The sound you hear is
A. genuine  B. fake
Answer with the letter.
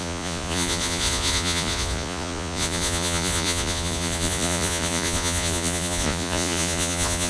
B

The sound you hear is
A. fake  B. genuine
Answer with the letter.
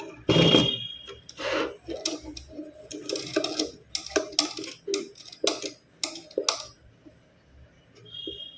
B